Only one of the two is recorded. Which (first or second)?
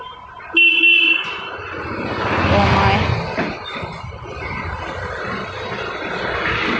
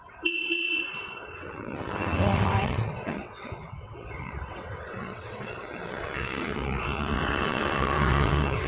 first